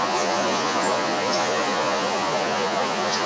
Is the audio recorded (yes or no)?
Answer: no